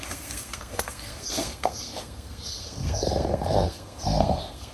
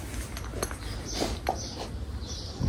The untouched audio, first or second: second